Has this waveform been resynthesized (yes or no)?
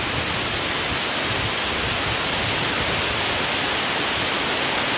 no